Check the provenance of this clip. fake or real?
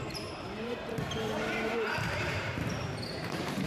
fake